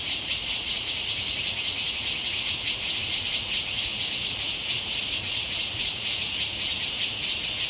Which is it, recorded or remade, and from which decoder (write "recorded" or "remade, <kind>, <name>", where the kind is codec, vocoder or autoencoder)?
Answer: remade, vocoder, Vocos